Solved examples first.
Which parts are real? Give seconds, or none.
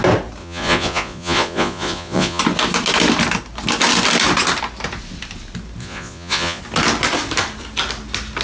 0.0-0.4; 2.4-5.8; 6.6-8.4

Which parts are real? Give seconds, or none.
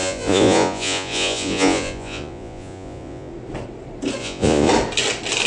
3.3-4.2; 4.7-5.5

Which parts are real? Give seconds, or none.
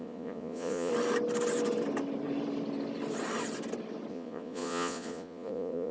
0.9-4.1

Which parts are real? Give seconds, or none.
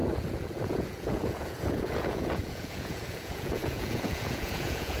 none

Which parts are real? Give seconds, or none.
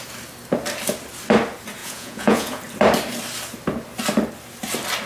0.0-1.8; 2.6-5.1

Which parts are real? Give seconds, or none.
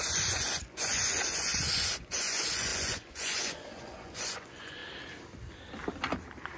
4.8-6.6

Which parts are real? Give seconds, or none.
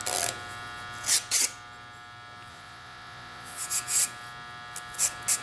0.0-2.5; 3.6-5.4